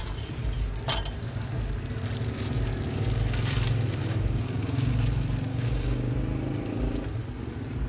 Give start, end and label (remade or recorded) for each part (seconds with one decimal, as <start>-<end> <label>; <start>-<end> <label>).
0.0-4.0 recorded; 4.0-4.9 remade; 4.9-5.5 recorded; 5.5-6.1 remade; 6.1-7.9 recorded